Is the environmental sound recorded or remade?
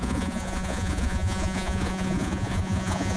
remade